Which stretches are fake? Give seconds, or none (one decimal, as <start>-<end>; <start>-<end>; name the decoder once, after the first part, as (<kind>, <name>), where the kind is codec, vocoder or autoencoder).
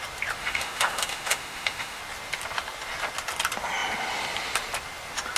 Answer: 0.4-2.0 (autoencoder, DAC-VAE)